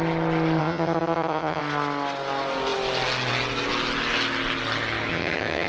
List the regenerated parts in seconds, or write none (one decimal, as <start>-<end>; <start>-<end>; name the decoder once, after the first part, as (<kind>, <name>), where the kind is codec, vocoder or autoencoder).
0.6-1.6 (vocoder, HiFi-GAN); 5.1-5.7